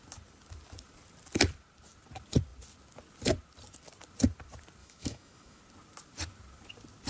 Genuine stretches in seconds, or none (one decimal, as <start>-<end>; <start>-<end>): 0.0-4.8; 5.6-7.1